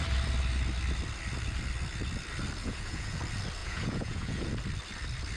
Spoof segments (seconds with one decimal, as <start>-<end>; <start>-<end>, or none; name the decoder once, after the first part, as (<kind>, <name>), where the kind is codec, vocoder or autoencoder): 2.6-3.2 (vocoder, Vocos); 3.6-4.5

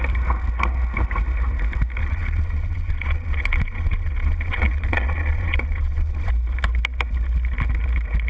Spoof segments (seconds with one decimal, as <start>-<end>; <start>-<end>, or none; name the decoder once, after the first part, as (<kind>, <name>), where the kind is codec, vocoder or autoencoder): 2.0-6.3 (vocoder, Vocos)

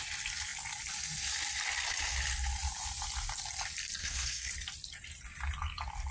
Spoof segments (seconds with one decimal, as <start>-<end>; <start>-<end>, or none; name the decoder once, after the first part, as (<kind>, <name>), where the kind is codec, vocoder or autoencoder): 4.0-4.5 (codec, SNAC)

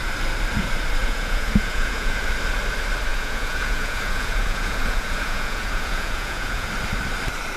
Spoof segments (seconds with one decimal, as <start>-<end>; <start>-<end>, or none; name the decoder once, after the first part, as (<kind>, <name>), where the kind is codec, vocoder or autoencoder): 1.0-2.2 (vocoder, Vocos); 3.1-6.7

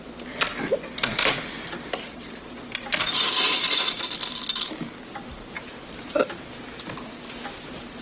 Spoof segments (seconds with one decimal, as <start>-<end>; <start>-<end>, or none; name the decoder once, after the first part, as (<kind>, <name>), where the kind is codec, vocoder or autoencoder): none

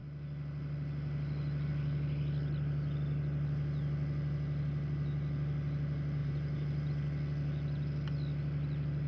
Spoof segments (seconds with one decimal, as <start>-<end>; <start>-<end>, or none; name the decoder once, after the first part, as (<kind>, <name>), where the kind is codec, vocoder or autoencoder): 6.2-6.9 (vocoder, BigVGAN v2)

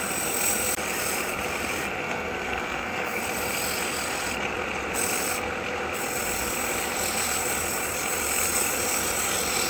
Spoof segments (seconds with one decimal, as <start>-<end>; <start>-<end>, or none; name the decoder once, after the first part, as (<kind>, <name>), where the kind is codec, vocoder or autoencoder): 1.9-3.2 (codec, SNAC)

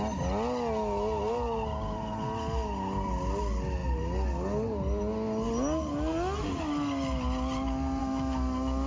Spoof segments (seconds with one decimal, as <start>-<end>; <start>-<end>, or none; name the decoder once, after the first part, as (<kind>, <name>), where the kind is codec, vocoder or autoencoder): 8.0-8.9 (autoencoder, DAC-VAE)